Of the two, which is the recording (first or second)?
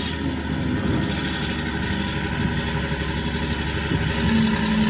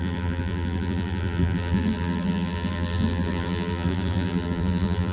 first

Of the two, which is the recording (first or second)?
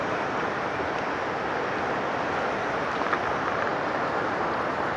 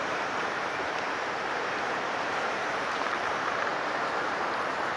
first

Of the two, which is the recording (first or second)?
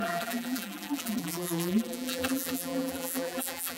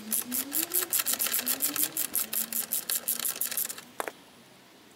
second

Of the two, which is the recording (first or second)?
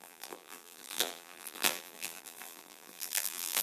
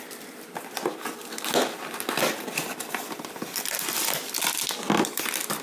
second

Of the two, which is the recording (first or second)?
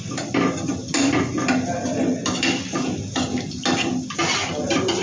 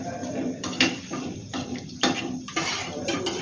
first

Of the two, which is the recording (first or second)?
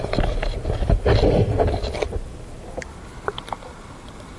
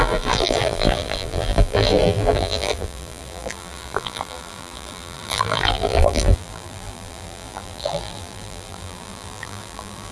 first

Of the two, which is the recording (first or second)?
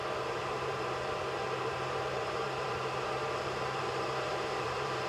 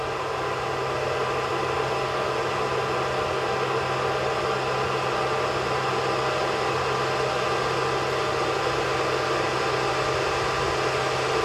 second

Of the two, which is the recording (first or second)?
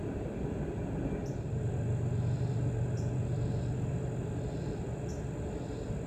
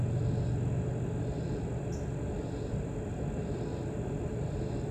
second